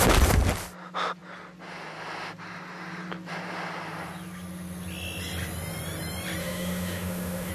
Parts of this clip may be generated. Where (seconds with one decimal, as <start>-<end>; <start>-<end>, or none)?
6.4-7.5